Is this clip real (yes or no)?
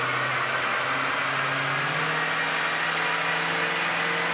yes